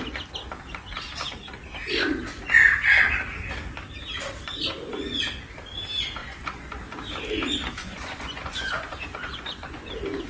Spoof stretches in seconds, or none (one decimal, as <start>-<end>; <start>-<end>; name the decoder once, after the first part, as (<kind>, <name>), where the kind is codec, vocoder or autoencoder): 6.2-6.8 (vocoder, Vocos); 7.8-9.9